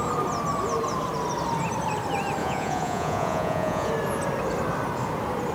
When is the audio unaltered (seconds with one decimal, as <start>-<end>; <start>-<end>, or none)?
0.0-2.4; 3.9-5.5